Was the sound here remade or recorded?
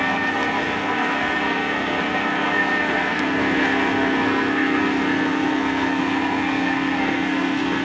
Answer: remade